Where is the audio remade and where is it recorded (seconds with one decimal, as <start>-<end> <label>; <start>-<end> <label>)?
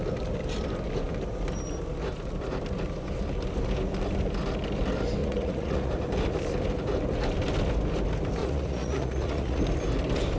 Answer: 0.0-5.2 recorded; 5.2-5.9 remade; 5.9-8.4 recorded; 8.4-9.6 remade; 9.6-10.4 recorded